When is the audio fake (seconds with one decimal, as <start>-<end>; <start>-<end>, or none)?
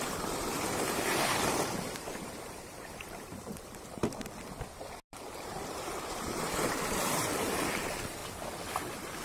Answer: 0.0-4.0; 5.1-8.2; 8.7-9.2